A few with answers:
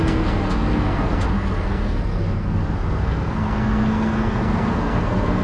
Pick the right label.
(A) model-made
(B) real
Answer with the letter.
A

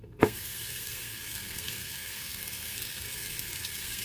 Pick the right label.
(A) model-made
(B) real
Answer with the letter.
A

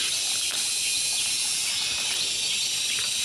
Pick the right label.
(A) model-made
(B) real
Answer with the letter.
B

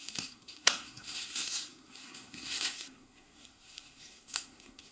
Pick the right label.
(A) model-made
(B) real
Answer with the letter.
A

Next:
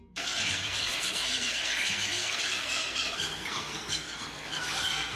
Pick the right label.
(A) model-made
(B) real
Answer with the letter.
A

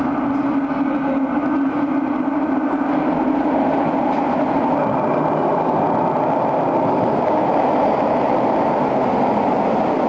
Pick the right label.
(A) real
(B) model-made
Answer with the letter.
A